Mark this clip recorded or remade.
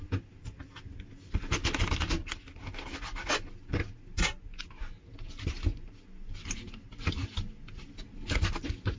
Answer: recorded